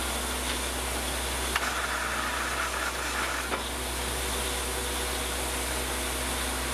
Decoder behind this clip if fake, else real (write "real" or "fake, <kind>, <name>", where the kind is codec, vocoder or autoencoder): real